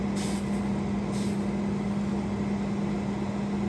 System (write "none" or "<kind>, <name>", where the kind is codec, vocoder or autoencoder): none